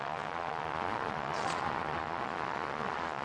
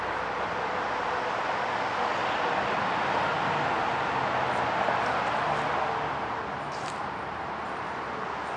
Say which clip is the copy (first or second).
first